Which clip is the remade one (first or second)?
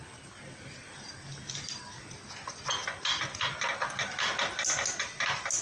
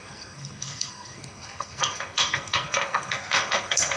second